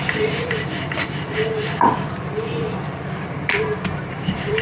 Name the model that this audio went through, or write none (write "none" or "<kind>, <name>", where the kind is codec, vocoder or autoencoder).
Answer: vocoder, BigVGAN v2